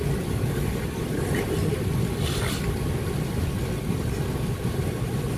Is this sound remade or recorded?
recorded